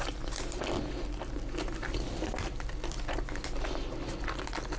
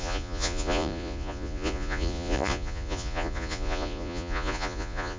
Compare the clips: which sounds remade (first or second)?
second